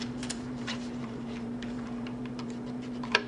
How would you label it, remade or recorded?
remade